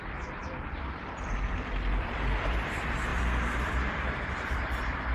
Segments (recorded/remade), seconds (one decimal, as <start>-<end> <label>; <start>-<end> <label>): 0.0-5.1 remade